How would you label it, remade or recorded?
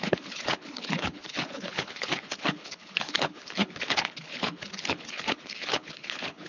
remade